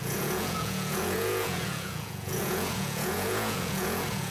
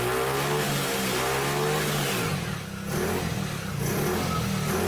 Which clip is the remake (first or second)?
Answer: first